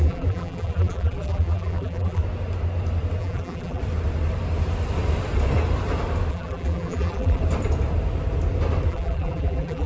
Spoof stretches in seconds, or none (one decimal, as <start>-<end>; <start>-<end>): 0.0-2.2; 3.2-3.8; 6.3-7.4; 8.9-9.9